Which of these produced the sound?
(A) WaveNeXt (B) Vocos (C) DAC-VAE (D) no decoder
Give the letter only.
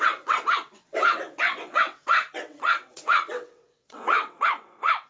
A